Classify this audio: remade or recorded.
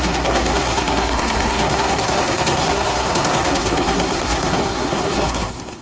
remade